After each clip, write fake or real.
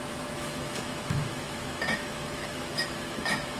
fake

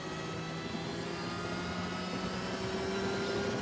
real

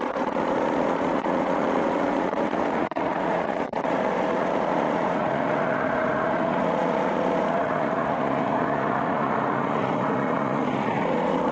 fake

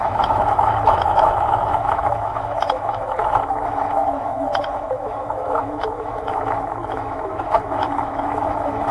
fake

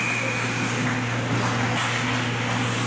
real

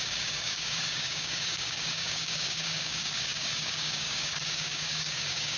fake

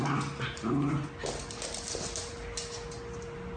real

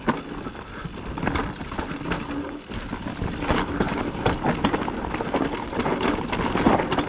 real